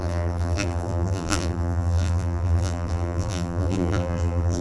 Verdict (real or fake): fake